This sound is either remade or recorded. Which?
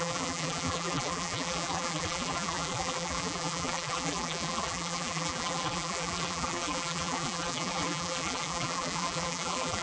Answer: remade